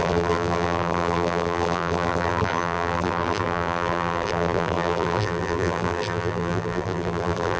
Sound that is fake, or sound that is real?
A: fake